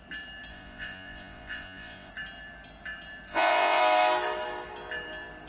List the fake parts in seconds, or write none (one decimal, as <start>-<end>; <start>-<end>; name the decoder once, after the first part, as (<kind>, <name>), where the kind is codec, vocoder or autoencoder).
0.5-2.1 (vocoder, Vocos); 3.3-3.8